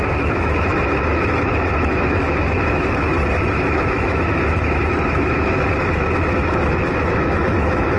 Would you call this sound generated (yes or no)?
yes